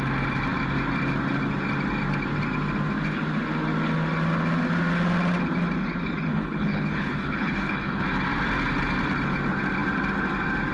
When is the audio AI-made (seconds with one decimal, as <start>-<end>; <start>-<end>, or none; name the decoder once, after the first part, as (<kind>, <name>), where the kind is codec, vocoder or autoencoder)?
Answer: 6.3-8.0 (codec, HILCodec)